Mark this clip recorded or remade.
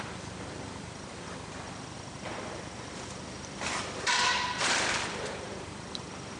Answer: remade